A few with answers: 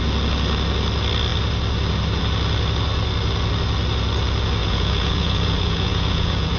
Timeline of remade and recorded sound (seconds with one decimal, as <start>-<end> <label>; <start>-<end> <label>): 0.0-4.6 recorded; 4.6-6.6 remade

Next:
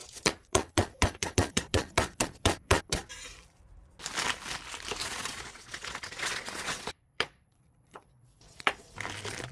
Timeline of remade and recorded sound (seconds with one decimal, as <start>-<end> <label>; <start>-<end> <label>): 0.0-3.1 remade; 3.1-5.0 recorded; 5.0-8.9 remade; 8.9-9.5 recorded

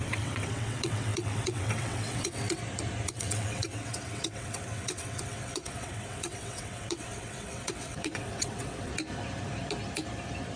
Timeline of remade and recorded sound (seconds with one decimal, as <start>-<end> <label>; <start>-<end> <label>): 0.0-2.6 remade; 2.6-3.1 recorded; 3.1-8.9 remade; 8.9-10.6 recorded